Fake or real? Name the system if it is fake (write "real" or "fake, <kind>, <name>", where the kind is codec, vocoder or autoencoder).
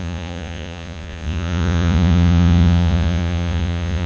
fake, vocoder, Vocos